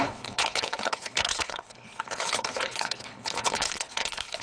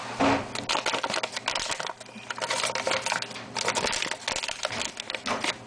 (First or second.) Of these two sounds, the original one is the second